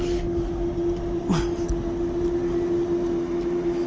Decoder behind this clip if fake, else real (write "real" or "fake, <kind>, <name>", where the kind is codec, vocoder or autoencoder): real